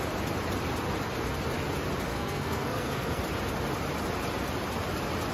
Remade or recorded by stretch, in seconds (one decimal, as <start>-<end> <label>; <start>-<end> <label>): 0.0-2.1 recorded; 2.1-3.2 remade; 3.2-5.3 recorded